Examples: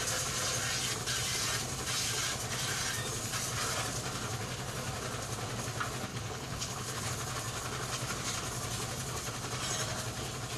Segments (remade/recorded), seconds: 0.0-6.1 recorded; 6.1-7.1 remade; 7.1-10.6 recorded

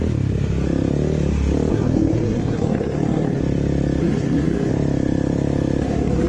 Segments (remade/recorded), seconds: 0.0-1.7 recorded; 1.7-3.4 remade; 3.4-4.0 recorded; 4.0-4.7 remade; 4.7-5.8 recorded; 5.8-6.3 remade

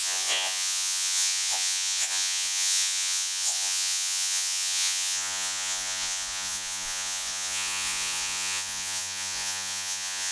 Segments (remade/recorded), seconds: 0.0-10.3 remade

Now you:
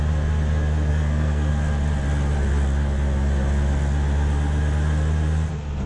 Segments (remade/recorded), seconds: 0.0-0.9 recorded; 0.9-1.5 remade; 1.5-5.9 recorded